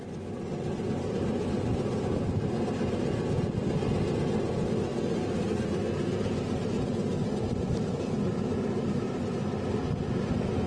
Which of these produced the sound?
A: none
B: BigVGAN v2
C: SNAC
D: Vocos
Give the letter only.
A